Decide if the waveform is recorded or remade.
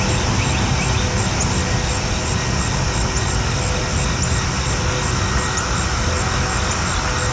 recorded